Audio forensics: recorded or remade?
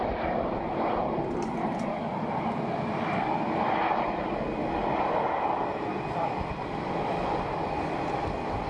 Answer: recorded